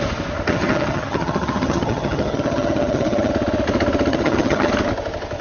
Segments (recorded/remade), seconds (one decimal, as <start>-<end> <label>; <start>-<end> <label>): 0.0-0.5 recorded; 0.5-3.3 remade; 3.3-4.1 recorded; 4.1-4.7 remade; 4.7-5.4 recorded